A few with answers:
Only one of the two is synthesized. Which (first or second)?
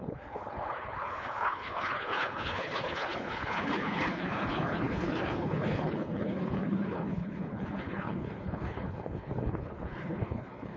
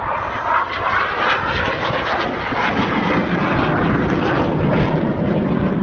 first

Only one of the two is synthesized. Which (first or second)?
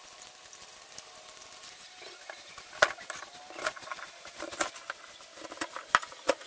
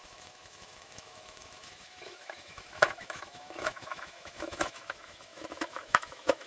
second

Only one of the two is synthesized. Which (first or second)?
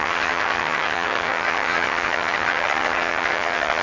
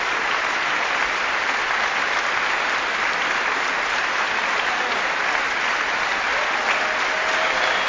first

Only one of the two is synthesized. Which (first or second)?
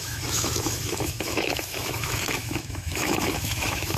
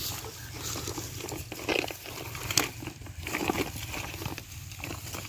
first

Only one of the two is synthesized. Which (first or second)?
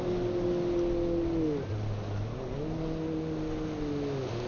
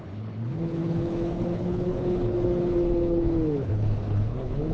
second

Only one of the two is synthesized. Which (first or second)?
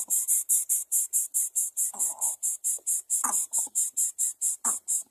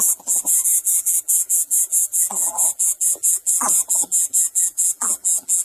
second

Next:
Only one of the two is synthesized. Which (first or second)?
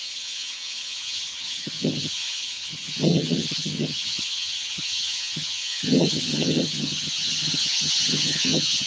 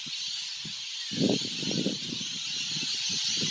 first